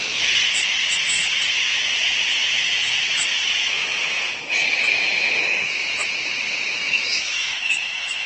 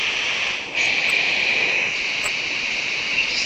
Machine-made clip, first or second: first